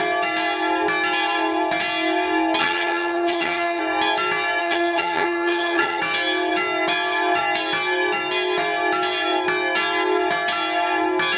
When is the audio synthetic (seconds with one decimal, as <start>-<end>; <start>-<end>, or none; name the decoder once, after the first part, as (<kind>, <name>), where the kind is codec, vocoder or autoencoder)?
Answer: 2.6-3.8 (vocoder, HiFi-GAN); 4.6-6.0

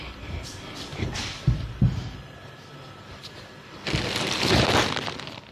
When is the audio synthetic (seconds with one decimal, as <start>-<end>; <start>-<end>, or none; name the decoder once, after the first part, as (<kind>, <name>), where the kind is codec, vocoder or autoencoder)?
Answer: 0.9-3.4 (vocoder, BigVGAN v2)

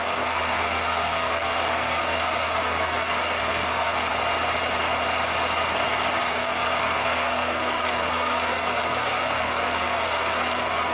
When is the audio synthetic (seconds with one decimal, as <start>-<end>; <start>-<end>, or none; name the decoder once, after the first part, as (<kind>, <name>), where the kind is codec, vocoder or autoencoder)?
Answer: 0.0-4.1 (codec, SNAC); 6.2-10.9

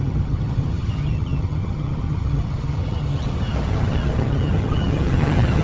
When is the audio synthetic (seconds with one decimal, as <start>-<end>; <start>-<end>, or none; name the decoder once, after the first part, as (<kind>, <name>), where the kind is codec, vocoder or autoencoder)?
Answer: 0.0-5.6 (vocoder, HiFi-GAN)

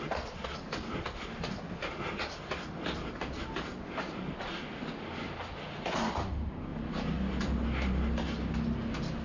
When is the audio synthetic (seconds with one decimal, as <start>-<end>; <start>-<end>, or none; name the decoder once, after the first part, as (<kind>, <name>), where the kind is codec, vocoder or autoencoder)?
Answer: none

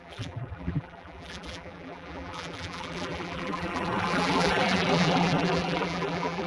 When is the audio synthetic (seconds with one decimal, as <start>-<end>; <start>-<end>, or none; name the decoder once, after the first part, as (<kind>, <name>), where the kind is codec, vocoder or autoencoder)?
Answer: 0.0-6.5 (vocoder, BigVGAN v2)